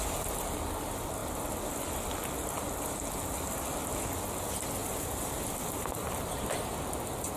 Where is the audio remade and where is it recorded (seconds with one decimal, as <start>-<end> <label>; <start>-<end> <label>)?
0.0-4.8 recorded; 4.8-6.7 remade; 6.7-7.4 recorded